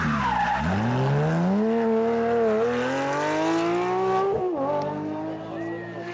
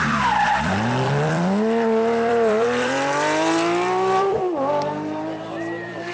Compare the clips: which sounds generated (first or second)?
second